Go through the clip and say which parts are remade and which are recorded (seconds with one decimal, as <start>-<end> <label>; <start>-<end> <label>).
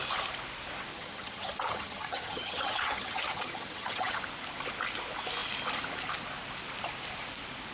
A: 0.0-0.9 recorded; 0.9-4.2 remade; 4.2-7.7 recorded